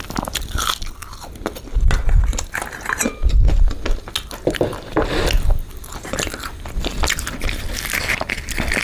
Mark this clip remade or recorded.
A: recorded